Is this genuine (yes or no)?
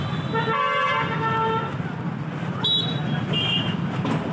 yes